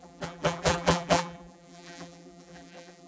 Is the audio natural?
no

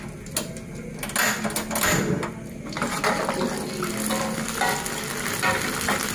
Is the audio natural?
yes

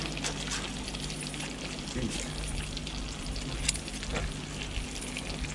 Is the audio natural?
yes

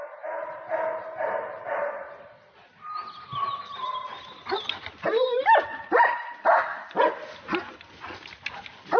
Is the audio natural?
yes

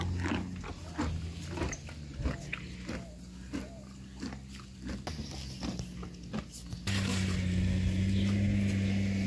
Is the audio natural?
yes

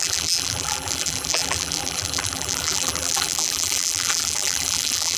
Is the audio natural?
no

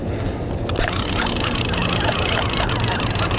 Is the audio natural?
yes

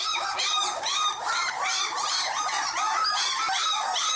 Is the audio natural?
no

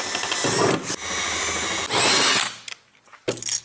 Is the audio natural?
yes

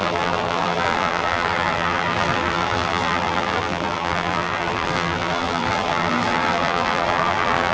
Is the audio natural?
no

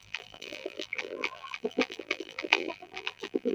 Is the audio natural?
no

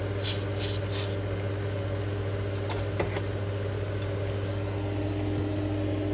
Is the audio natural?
yes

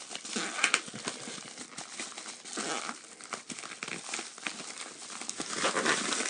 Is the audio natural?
yes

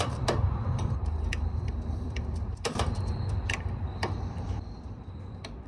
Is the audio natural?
no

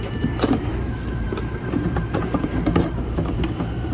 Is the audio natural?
no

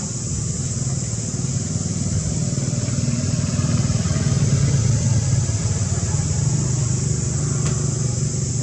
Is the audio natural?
yes